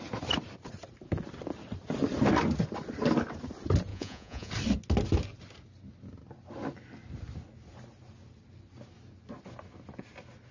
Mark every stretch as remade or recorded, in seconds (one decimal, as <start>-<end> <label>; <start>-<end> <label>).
0.0-3.9 recorded; 3.9-4.5 remade; 4.5-10.5 recorded